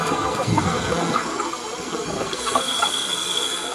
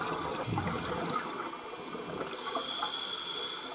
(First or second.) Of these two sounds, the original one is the second